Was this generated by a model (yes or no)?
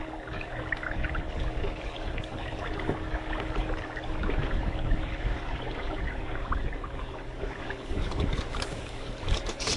yes